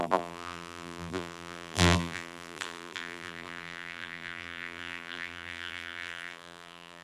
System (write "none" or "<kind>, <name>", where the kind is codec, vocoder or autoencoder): vocoder, BigVGAN v2